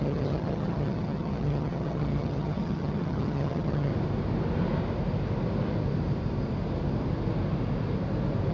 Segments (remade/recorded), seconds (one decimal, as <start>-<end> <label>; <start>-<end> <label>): 0.0-3.9 remade; 3.9-8.5 recorded